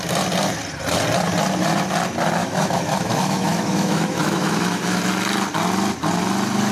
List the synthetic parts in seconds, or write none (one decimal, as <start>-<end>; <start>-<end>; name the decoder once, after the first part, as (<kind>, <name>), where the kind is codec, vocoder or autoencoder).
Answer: 2.4-5.0 (autoencoder, DAC-VAE)